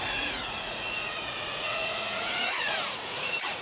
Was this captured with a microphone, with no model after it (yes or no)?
no